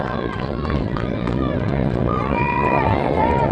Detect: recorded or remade remade